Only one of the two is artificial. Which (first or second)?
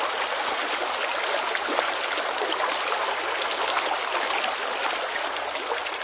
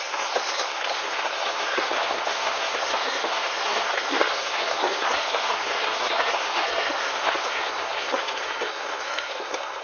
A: second